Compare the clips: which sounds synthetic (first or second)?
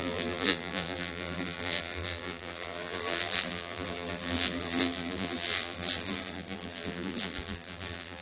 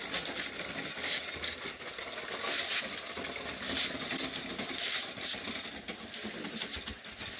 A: first